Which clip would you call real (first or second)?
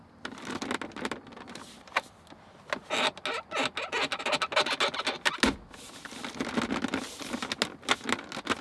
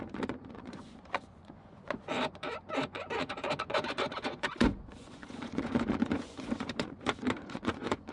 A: first